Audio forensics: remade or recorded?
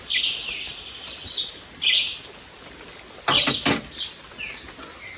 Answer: recorded